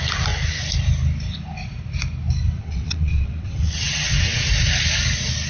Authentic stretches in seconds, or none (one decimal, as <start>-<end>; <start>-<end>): 0.0-2.6; 4.5-5.5